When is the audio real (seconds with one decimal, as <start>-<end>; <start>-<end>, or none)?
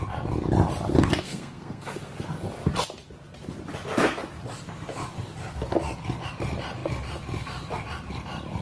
0.0-0.9; 2.1-8.6